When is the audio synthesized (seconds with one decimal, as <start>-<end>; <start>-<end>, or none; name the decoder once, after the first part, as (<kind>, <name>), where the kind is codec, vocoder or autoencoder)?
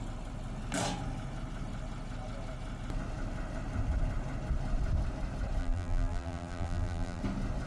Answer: 5.6-7.2 (vocoder, BigVGAN v2)